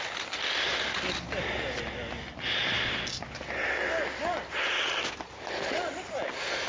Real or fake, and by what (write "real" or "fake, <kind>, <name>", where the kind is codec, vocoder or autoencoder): real